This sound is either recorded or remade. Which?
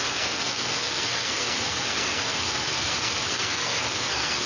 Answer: remade